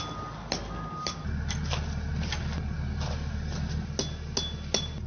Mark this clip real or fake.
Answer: real